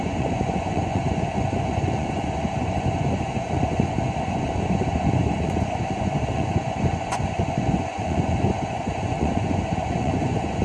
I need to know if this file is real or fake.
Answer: fake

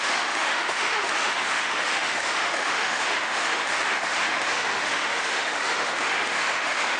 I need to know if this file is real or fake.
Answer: fake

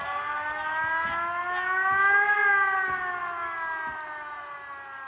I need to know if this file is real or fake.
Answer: real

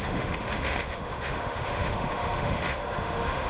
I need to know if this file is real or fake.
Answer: fake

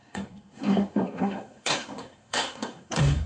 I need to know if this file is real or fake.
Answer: fake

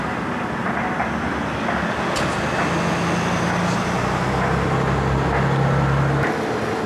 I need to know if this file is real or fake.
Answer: real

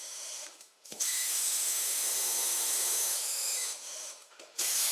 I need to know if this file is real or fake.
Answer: fake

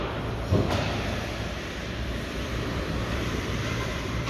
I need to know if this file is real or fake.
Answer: fake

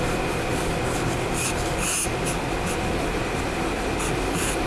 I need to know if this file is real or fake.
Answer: real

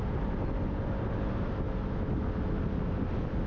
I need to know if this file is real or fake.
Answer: real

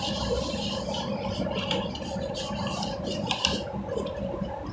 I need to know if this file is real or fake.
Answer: real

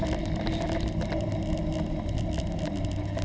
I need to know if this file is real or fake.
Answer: real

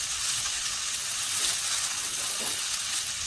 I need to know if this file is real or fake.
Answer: fake